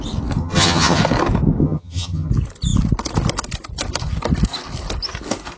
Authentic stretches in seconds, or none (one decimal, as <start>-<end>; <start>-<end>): 0.0-0.4; 1.0-1.6; 2.3-5.6